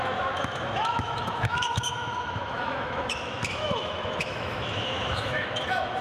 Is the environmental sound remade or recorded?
remade